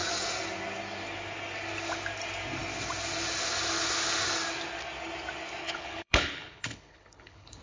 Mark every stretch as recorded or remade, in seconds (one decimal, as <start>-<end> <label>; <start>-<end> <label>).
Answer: 0.0-5.6 recorded; 5.6-7.6 remade